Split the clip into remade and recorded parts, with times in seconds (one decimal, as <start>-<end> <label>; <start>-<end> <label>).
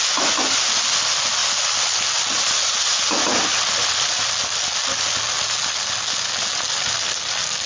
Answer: 0.0-7.7 recorded